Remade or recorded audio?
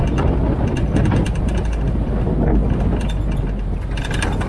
recorded